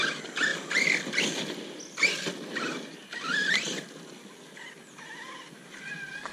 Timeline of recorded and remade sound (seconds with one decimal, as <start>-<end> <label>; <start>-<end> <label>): 0.0-6.3 recorded